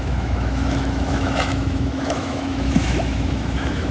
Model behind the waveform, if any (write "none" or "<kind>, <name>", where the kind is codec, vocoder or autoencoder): autoencoder, DAC-VAE